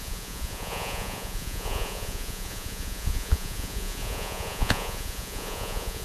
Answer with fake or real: fake